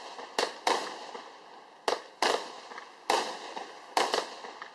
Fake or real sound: real